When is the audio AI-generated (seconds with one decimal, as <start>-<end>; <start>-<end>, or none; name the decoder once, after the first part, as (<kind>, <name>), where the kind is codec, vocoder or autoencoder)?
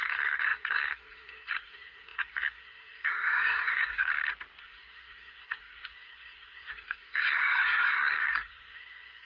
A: 0.0-4.1 (codec, SNAC); 4.6-9.2